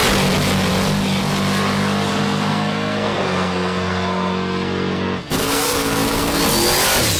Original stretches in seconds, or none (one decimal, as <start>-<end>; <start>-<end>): 0.0-2.1; 6.4-7.2